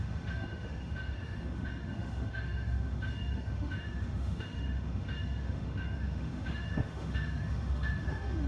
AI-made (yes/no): yes